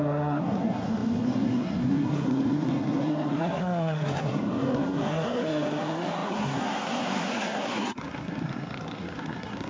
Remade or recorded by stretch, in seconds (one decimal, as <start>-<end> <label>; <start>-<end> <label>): 0.0-9.7 remade